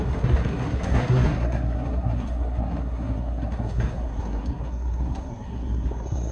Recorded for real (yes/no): no